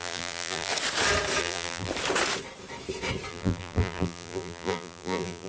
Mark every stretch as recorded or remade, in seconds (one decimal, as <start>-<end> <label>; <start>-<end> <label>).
0.0-0.7 remade; 0.7-1.4 recorded; 1.4-1.9 remade; 1.9-3.3 recorded; 3.3-5.5 remade